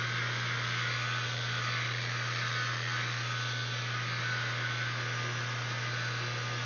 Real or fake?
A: real